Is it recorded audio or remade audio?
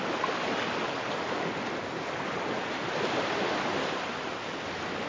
recorded